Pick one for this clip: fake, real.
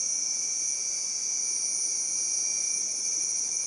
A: real